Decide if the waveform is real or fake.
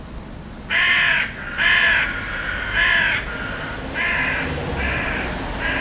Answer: real